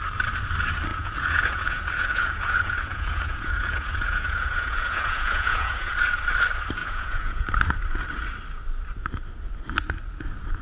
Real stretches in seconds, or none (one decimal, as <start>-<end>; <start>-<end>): 0.0-0.9; 5.9-6.8; 7.5-10.6